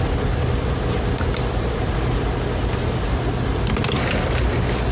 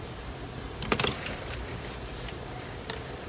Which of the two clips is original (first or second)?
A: first